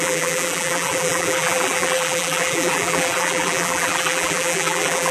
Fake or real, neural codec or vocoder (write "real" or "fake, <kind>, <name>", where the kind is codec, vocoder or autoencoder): fake, vocoder, BigVGAN v2